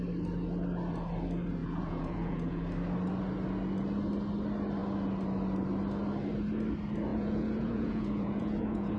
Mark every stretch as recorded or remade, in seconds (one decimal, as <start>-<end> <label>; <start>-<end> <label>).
0.0-1.6 recorded; 1.6-2.6 remade; 2.6-7.1 recorded; 7.1-9.0 remade